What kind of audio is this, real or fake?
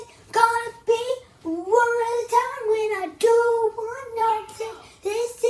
fake